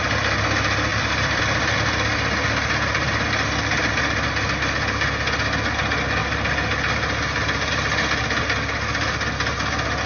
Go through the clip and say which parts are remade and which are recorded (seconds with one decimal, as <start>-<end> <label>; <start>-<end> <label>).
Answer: 0.0-0.9 recorded; 0.9-1.4 remade; 1.4-10.1 recorded